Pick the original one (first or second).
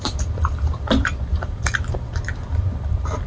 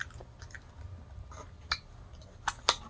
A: second